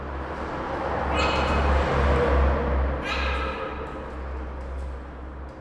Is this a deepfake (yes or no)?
no